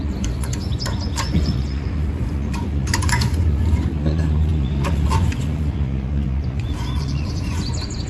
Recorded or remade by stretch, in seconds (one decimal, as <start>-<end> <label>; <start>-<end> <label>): 0.0-8.1 remade